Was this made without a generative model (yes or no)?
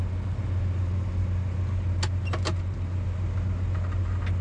yes